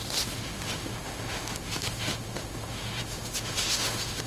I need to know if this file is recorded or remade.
remade